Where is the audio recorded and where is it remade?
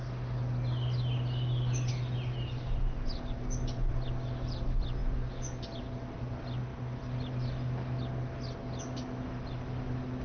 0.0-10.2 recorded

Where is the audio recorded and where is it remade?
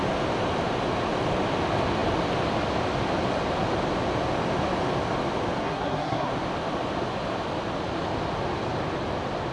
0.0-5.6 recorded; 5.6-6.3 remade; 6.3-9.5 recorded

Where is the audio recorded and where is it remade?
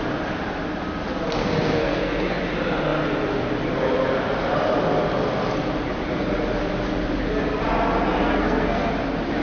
0.0-1.4 recorded; 1.4-2.4 remade; 2.4-8.2 recorded; 8.2-8.9 remade; 8.9-9.4 recorded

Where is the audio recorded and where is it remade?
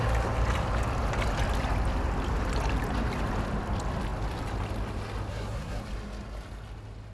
0.0-5.3 recorded; 5.3-5.8 remade; 5.8-7.1 recorded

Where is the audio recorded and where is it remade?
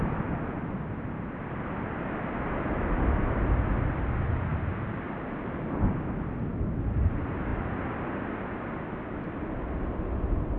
0.0-10.6 recorded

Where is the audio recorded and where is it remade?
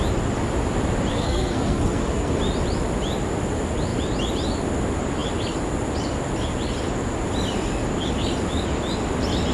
0.0-1.1 recorded; 1.1-2.4 remade; 2.4-9.5 recorded